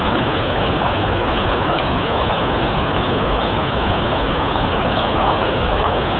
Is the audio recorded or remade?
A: remade